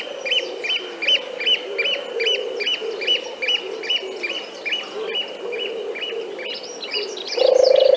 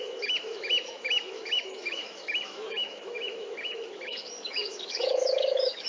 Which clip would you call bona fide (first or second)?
first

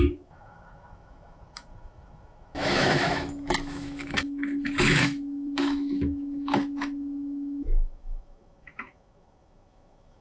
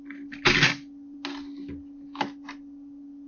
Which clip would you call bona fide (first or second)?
second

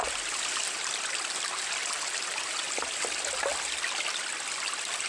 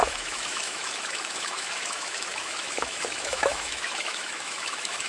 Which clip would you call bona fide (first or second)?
first